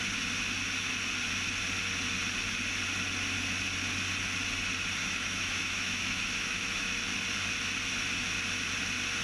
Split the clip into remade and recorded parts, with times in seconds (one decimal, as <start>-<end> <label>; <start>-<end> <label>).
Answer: 0.0-5.0 recorded; 5.0-6.9 remade; 6.9-9.2 recorded